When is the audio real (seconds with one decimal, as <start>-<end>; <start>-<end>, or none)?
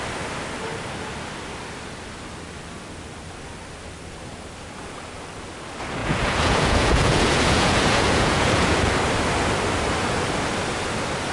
0.0-6.0; 8.9-11.3